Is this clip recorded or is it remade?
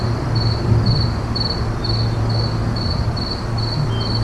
recorded